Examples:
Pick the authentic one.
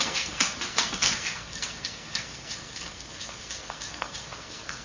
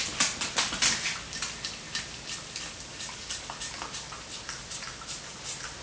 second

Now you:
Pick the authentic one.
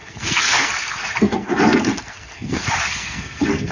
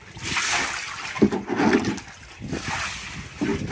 second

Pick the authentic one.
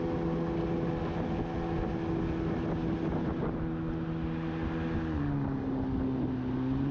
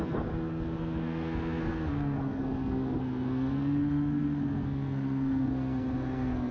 first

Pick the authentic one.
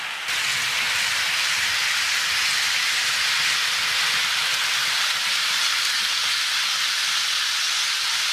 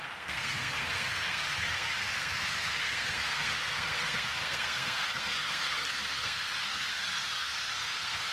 first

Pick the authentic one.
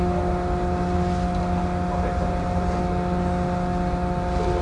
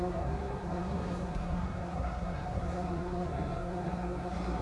first